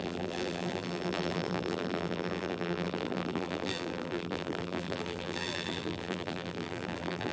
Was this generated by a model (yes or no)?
yes